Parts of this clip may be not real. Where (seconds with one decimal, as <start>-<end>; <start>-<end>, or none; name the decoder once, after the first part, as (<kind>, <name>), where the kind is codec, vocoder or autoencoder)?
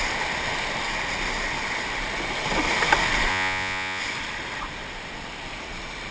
3.3-4.0 (vocoder, Vocos)